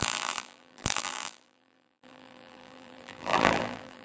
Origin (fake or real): fake